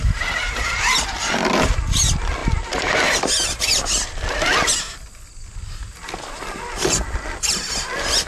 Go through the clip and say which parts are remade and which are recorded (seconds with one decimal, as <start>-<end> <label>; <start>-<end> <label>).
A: 0.0-8.3 recorded